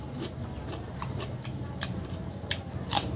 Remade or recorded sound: recorded